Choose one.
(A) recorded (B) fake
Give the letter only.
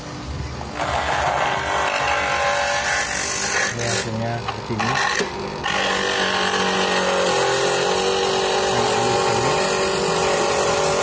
A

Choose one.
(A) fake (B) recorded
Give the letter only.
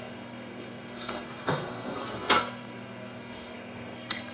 A